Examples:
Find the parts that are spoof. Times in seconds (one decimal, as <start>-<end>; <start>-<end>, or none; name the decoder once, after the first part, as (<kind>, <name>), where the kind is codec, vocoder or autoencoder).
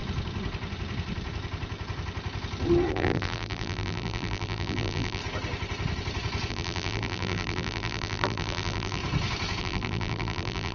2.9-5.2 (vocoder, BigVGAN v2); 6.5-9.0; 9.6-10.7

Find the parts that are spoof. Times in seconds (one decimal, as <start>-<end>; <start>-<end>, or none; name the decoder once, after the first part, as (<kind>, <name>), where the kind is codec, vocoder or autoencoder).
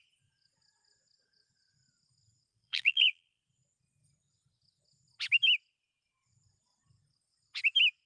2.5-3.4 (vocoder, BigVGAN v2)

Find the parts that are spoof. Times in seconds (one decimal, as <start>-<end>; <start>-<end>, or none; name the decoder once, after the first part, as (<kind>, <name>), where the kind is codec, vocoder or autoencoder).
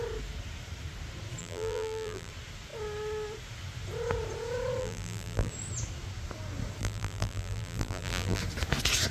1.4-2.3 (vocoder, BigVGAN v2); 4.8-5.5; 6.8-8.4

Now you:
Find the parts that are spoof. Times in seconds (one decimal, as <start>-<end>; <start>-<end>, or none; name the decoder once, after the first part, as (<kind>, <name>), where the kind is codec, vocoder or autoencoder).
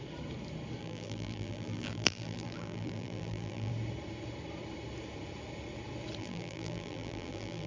0.8-3.7 (vocoder, BigVGAN v2); 6.2-7.7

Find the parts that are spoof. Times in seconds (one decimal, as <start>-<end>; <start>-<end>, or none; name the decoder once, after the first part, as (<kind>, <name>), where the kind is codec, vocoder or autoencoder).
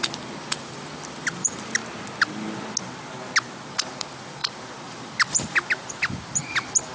0.0-1.8 (vocoder, BigVGAN v2); 3.7-6.9